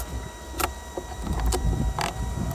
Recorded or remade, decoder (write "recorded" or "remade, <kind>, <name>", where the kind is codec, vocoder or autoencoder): remade, vocoder, BigVGAN v2